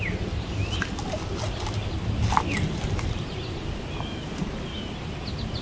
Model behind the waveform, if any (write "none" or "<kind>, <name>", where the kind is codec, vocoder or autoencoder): none